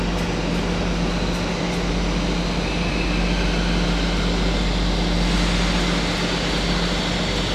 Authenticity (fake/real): real